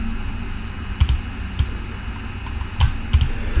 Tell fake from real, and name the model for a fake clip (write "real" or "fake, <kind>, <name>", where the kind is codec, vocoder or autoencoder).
real